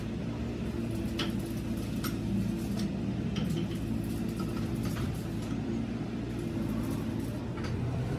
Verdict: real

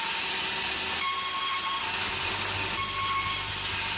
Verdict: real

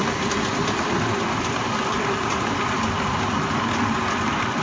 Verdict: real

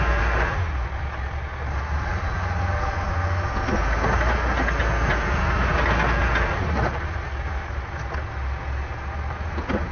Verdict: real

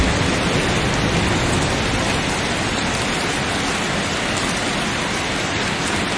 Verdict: real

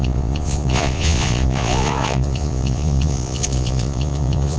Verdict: fake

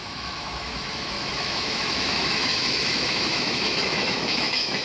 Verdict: fake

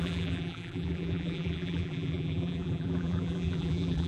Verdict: fake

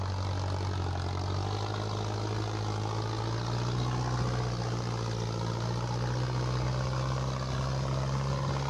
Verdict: real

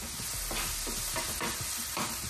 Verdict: real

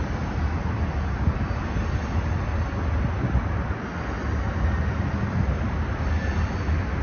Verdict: real